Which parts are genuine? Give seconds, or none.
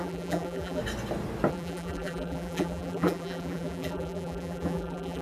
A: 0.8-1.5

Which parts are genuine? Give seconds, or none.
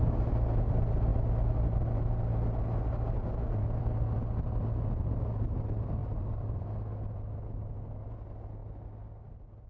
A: 0.0-6.0; 6.5-9.7